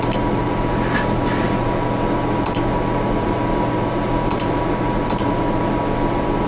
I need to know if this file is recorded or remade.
recorded